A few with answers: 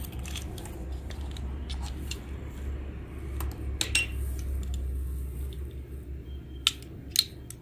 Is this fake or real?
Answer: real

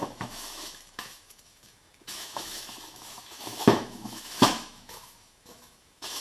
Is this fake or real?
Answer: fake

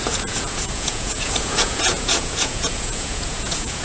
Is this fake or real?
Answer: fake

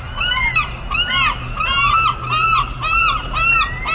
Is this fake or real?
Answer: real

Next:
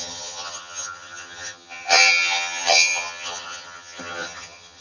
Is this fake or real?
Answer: fake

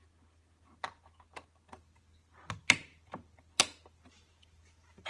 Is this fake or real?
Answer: real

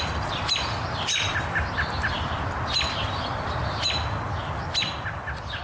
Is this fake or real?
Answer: real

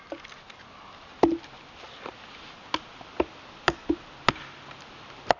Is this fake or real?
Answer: real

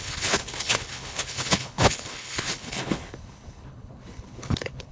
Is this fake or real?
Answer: fake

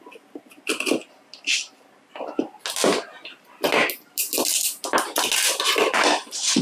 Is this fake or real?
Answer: real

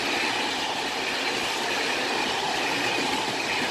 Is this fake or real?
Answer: real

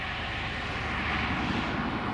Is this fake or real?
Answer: real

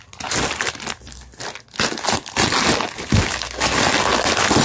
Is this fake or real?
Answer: real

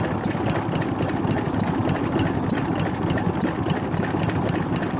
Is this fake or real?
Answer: real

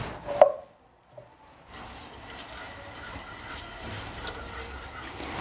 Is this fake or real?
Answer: real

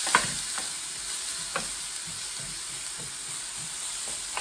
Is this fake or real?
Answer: real